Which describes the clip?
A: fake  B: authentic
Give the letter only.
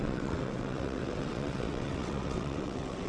A